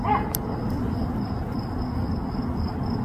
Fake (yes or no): no